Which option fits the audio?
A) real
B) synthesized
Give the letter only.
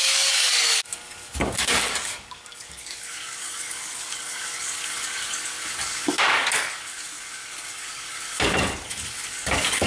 B